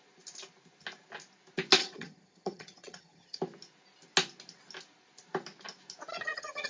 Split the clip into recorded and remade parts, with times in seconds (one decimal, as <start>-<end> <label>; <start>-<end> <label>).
0.0-1.8 recorded; 1.8-3.4 remade; 3.4-6.1 recorded; 6.1-6.7 remade